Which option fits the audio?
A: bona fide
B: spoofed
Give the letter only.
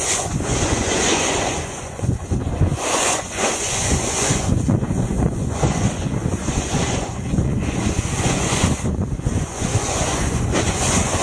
B